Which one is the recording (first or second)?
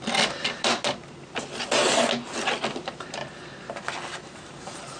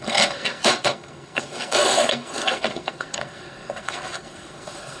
first